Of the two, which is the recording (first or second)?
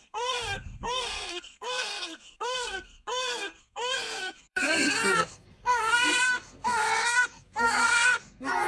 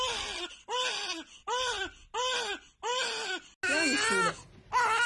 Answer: second